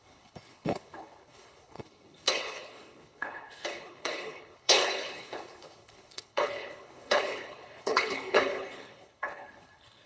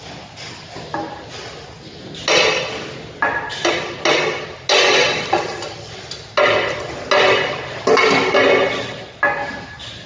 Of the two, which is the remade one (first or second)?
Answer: first